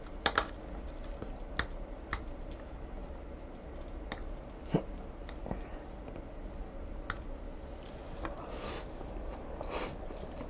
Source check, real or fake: real